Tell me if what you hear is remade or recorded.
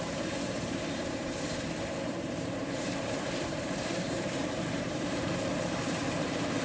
remade